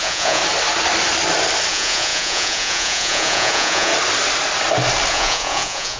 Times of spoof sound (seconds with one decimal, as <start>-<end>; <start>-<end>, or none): 0.0-0.4; 1.7-3.9; 5.1-6.0